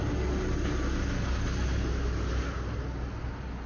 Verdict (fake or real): real